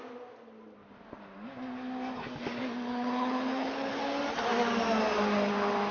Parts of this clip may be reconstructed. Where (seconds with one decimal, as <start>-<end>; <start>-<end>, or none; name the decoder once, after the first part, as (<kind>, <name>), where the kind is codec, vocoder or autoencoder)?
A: 2.9-4.0 (codec, HILCodec)